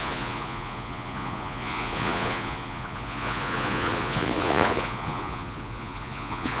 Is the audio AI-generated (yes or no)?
yes